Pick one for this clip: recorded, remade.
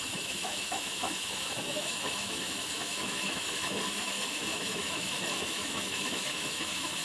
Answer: remade